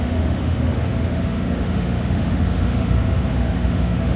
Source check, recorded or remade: remade